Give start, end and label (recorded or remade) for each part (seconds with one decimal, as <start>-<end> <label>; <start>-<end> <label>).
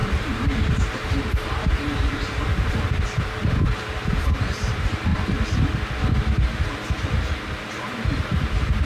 0.0-5.1 remade; 5.1-7.7 recorded; 7.7-8.9 remade